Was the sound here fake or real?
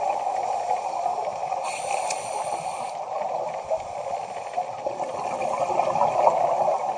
real